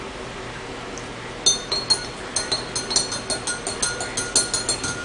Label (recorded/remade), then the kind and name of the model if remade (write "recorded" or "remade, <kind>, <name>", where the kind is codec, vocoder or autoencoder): recorded